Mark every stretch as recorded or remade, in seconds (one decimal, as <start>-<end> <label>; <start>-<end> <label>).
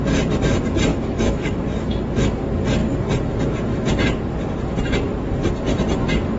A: 0.0-0.9 recorded; 0.9-1.6 remade; 1.6-6.4 recorded